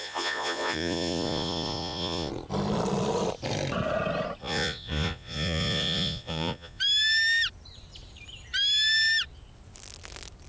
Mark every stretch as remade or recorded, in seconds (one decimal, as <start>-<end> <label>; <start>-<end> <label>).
0.0-2.3 remade; 2.3-4.4 recorded; 4.4-6.8 remade; 6.8-10.5 recorded